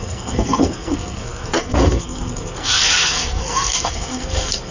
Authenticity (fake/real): fake